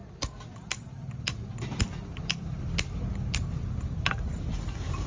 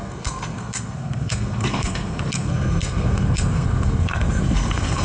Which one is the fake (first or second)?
second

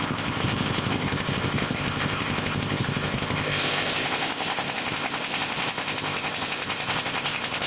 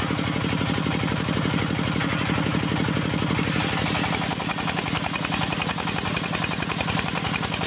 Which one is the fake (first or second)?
first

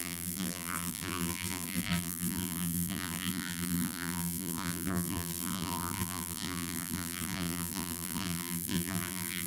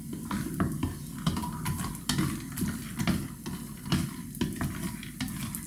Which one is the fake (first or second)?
first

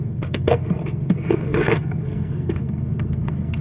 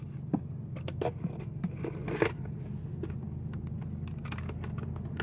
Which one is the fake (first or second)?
first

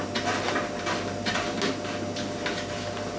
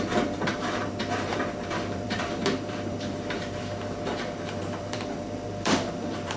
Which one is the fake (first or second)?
second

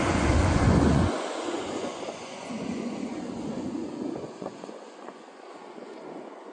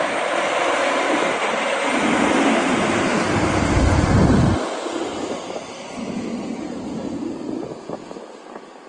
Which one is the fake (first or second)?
first